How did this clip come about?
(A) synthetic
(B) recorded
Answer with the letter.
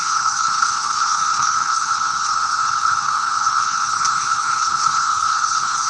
A